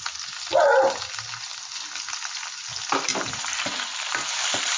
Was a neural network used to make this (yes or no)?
no